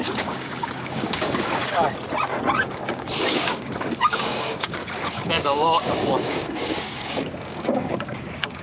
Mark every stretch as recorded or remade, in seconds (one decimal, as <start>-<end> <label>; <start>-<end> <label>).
0.0-1.6 remade; 1.6-2.6 recorded; 2.6-8.6 remade

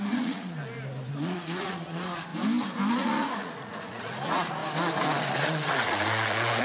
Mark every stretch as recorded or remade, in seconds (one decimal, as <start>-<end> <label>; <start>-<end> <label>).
0.0-0.6 remade; 0.6-1.1 recorded; 1.1-2.3 remade; 2.3-2.9 recorded; 2.9-4.6 remade; 4.6-5.3 recorded; 5.3-6.6 remade

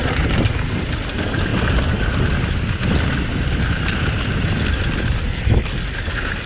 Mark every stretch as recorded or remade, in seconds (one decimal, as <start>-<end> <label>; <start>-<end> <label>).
0.0-6.5 recorded

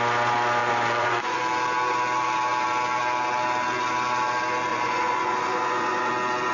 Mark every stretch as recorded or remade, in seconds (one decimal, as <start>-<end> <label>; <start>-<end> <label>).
0.0-0.6 recorded; 0.6-1.4 remade; 1.4-4.7 recorded; 4.7-6.1 remade; 6.1-6.5 recorded

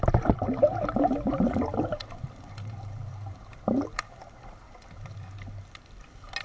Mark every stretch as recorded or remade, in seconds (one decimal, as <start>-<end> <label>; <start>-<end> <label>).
0.0-1.3 recorded; 1.3-5.1 remade; 5.1-6.4 recorded

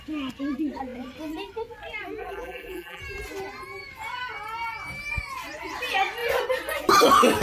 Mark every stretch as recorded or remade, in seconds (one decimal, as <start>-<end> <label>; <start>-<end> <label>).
0.0-2.2 recorded; 2.2-3.0 remade; 3.0-7.4 recorded